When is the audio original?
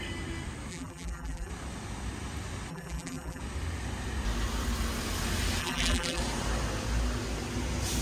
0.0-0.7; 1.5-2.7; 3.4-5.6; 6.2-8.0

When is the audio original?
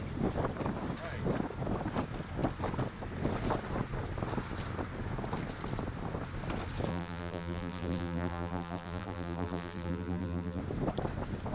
0.0-6.9; 10.6-11.5